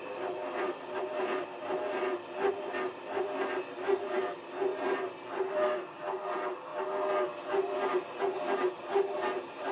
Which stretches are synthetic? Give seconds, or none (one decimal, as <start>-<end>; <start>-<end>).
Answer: none